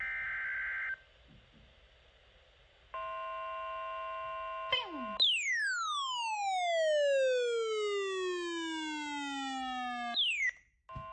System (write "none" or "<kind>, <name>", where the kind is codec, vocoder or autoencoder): none